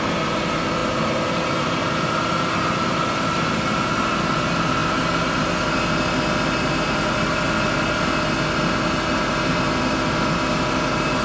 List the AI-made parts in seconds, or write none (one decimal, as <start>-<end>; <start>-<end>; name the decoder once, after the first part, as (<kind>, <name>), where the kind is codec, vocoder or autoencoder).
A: none